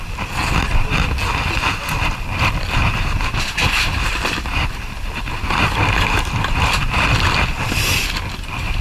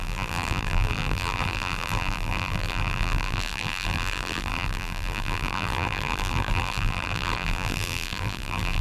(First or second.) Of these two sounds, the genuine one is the first